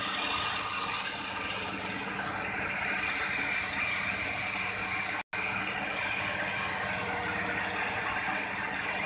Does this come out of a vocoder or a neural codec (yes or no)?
no